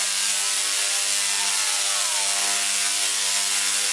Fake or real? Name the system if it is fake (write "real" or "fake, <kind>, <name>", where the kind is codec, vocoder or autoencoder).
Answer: real